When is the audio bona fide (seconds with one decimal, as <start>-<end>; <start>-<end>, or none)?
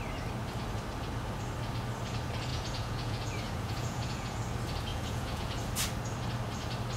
0.0-2.5; 4.4-4.9; 5.6-7.0